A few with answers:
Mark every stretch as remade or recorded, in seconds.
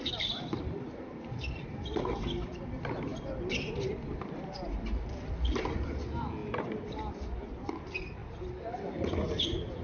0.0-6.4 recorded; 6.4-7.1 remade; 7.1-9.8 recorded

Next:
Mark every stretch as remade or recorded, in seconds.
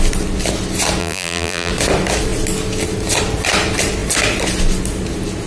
0.0-1.0 recorded; 1.0-1.7 remade; 1.7-5.5 recorded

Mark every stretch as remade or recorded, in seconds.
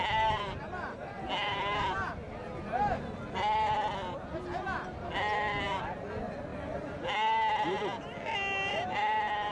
0.0-9.5 recorded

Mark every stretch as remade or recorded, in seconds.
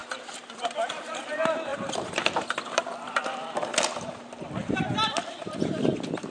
0.0-1.7 recorded; 1.7-4.3 remade; 4.3-6.3 recorded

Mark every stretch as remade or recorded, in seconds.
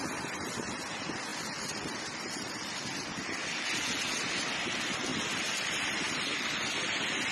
0.0-5.1 recorded; 5.1-6.2 remade; 6.2-7.3 recorded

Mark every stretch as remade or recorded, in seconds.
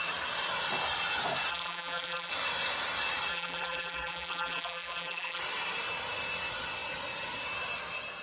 0.0-1.5 recorded; 1.5-2.3 remade; 2.3-3.3 recorded; 3.3-5.4 remade; 5.4-8.2 recorded